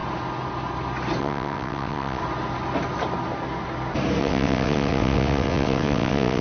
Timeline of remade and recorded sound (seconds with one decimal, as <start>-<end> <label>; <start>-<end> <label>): 0.0-1.2 recorded; 1.2-2.2 remade; 2.2-4.2 recorded; 4.2-6.4 remade